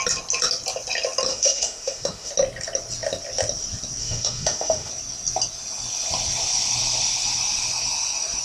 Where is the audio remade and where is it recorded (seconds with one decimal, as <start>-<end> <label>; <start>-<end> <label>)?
0.0-1.3 recorded; 1.3-2.3 remade; 2.3-4.0 recorded; 4.0-4.9 remade; 4.9-8.4 recorded